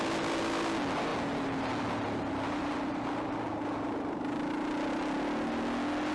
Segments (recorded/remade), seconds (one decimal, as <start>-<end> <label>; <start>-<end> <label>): 0.0-6.1 recorded